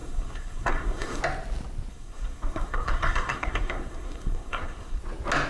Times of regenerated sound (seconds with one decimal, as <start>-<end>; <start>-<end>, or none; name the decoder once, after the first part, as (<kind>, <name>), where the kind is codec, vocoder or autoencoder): 0.0-1.2 (codec, SNAC); 1.9-5.0